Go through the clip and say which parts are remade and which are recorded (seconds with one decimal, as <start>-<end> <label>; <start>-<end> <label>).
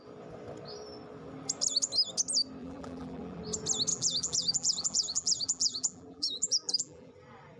0.0-2.6 recorded; 2.6-3.4 remade; 3.4-3.9 recorded; 3.9-7.1 remade; 7.1-7.6 recorded